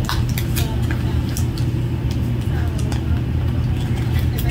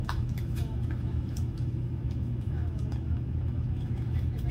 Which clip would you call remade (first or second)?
second